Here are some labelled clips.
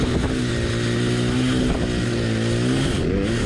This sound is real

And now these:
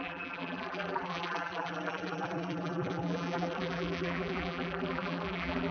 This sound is fake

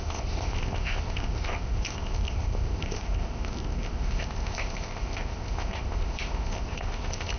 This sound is fake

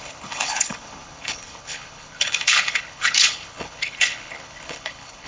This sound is fake